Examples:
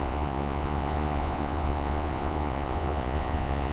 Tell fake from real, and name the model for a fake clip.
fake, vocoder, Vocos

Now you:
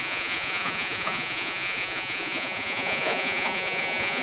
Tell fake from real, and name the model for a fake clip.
fake, vocoder, Vocos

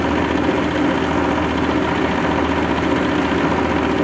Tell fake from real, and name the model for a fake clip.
real